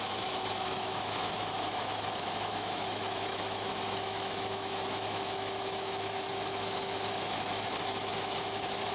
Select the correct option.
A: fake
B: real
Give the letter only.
A